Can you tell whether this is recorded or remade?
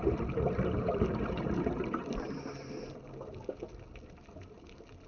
recorded